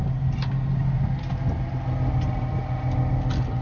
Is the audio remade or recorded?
recorded